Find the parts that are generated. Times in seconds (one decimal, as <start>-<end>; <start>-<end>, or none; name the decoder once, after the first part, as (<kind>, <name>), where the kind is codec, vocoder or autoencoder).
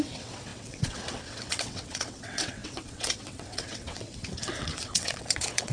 0.0-5.7 (vocoder, WaveNeXt)